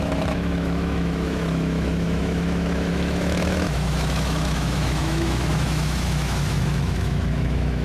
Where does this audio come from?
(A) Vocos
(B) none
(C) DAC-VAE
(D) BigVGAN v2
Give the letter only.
C